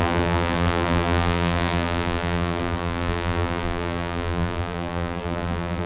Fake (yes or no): yes